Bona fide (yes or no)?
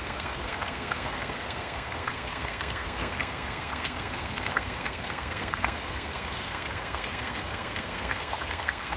no